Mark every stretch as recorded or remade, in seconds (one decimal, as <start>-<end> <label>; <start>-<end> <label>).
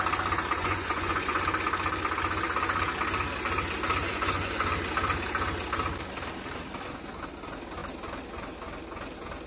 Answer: 0.0-0.6 recorded; 0.6-1.4 remade; 1.4-4.1 recorded; 4.1-4.7 remade; 4.7-9.5 recorded